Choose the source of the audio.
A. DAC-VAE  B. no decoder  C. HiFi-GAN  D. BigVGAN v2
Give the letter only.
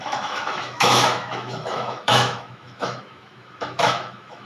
A